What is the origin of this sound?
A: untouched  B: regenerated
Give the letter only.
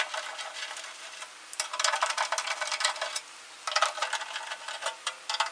A